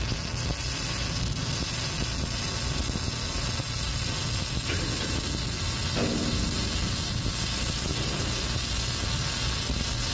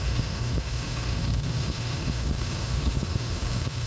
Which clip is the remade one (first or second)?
second